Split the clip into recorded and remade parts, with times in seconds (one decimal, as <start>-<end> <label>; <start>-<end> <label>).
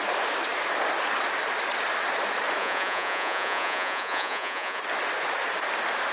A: 0.0-2.6 recorded; 2.6-4.8 remade; 4.8-6.1 recorded